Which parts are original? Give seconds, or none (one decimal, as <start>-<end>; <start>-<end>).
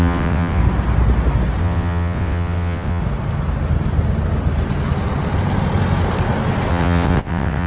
0.6-1.6; 3.0-6.7